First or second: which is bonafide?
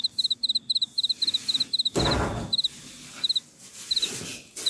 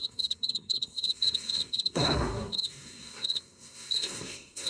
first